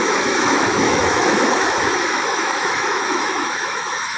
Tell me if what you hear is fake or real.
fake